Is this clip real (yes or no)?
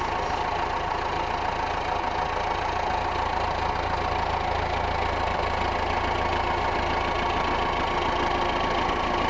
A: yes